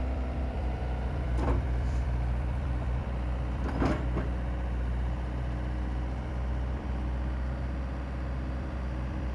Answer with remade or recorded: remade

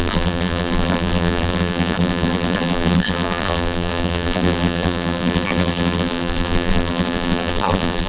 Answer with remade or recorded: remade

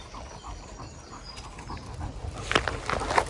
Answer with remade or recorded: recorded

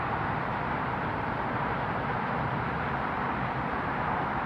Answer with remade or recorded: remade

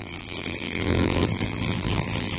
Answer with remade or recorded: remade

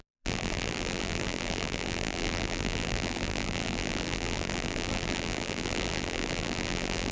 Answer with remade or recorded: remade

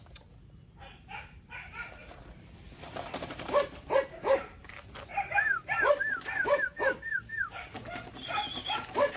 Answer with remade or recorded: remade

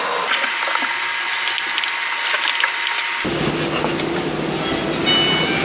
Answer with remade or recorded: recorded